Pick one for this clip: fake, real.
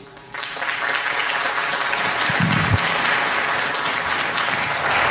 real